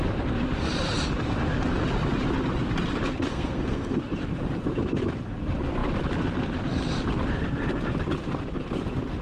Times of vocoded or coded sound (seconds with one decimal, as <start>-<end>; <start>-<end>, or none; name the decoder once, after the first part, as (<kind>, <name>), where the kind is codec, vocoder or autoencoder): 3.3-4.0 (codec, SNAC)